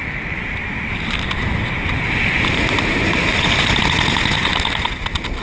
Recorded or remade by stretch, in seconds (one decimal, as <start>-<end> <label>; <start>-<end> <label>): 0.0-5.4 recorded

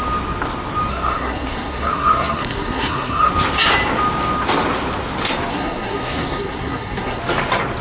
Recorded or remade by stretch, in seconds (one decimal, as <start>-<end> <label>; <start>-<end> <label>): 0.0-0.9 recorded; 0.9-3.3 remade; 3.3-5.5 recorded; 5.5-7.2 remade; 7.2-7.8 recorded

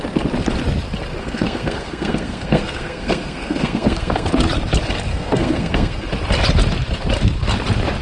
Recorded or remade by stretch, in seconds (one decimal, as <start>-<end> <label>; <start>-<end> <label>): 0.0-1.2 recorded; 1.2-4.3 remade; 4.3-5.1 recorded; 5.1-6.1 remade; 6.1-8.0 recorded

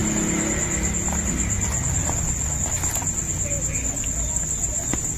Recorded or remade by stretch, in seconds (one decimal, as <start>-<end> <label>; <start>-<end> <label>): 0.0-5.2 recorded

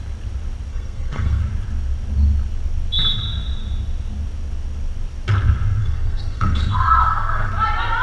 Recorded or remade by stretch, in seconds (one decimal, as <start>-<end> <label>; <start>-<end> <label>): 0.0-0.7 recorded; 0.7-1.4 remade; 1.4-5.8 recorded; 5.8-7.5 remade; 7.5-8.0 recorded

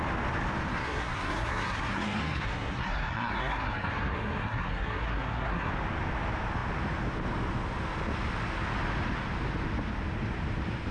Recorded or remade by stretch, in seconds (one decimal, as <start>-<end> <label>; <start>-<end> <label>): 0.0-0.7 recorded; 0.7-5.7 remade; 5.7-10.9 recorded

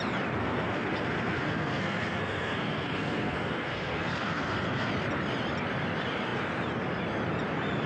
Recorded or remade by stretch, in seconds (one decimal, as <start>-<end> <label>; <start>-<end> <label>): 0.0-0.4 recorded; 0.4-4.9 remade; 4.9-7.9 recorded